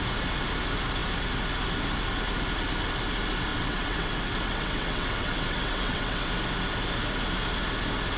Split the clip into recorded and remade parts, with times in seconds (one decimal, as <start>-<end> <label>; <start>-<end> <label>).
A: 0.0-3.5 recorded; 3.5-6.3 remade; 6.3-8.2 recorded